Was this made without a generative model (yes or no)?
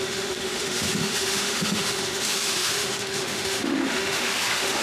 no